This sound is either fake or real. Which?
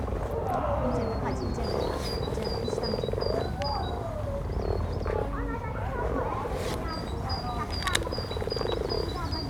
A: real